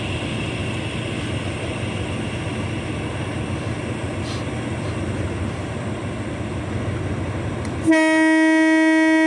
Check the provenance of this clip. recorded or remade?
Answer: recorded